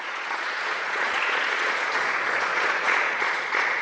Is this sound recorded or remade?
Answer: remade